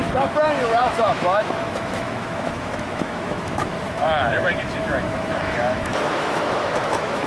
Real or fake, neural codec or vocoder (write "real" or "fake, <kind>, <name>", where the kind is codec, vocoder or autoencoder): fake, autoencoder, DAC-VAE